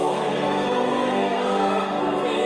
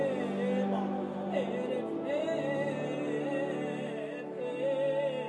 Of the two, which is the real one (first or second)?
second